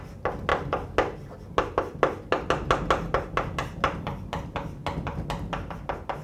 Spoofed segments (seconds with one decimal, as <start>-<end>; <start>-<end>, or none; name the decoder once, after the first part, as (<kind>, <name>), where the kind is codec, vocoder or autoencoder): none